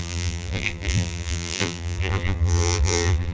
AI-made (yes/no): yes